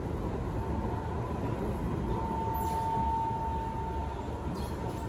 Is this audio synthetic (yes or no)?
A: no